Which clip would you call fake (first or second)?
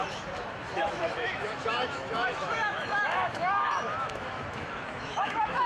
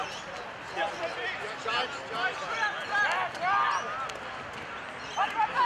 first